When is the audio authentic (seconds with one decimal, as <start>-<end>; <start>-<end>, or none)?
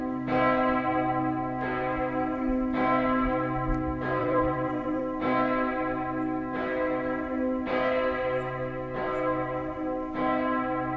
0.0-4.2; 5.0-11.0